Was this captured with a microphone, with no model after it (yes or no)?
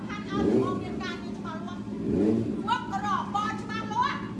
yes